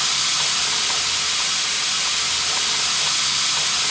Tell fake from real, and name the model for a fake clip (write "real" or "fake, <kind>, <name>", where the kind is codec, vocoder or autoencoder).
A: real